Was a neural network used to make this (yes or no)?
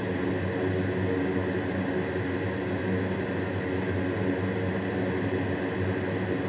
no